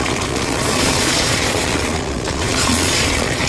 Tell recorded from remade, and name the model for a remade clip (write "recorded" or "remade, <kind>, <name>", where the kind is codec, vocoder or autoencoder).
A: remade, vocoder, Vocos